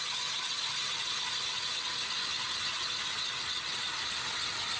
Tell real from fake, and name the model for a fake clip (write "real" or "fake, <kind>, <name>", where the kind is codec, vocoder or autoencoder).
real